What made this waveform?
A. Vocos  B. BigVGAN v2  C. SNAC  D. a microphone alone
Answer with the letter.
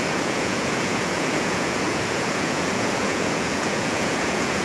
A